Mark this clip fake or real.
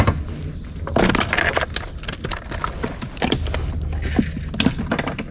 real